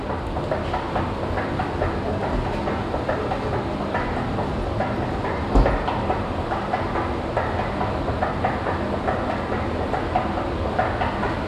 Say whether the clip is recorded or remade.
recorded